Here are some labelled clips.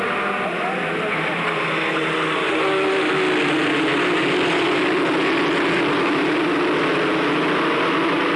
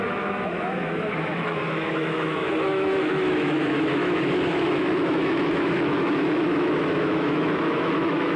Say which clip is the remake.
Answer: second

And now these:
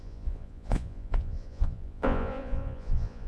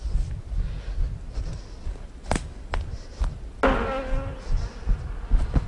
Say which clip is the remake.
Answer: first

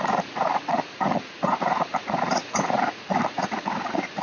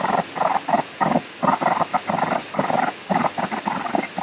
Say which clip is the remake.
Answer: first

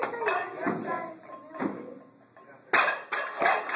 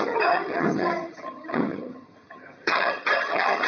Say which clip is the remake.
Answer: second